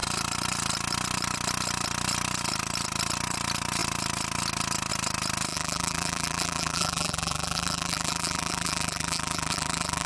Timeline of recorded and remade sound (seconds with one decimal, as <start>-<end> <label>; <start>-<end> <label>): 0.0-5.5 recorded; 5.5-10.1 remade